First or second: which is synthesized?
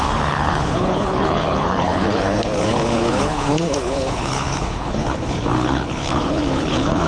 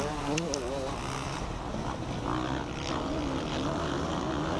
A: first